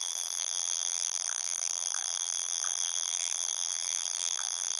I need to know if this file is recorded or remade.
remade